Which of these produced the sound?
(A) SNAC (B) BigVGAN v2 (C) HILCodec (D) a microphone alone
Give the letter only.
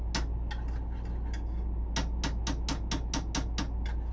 D